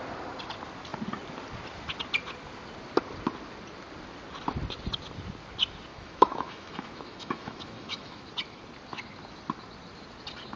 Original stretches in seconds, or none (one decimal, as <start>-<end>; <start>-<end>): 0.0-5.9; 8.3-10.6